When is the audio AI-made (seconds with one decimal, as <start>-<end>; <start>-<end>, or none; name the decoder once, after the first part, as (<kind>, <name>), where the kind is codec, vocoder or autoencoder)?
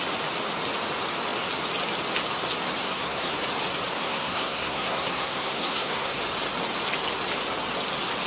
2.8-3.4 (codec, SNAC); 4.0-6.2